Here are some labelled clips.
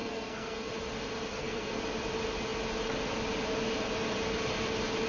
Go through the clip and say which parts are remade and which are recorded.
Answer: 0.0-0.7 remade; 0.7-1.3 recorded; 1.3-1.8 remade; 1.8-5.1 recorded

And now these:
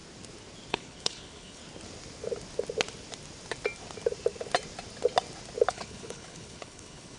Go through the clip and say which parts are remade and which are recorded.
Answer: 0.0-0.7 recorded; 0.7-1.6 remade; 1.6-5.7 recorded; 5.7-7.2 remade

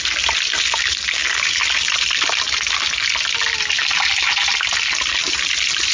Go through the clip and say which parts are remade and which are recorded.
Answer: 0.0-5.9 recorded